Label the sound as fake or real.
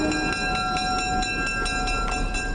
real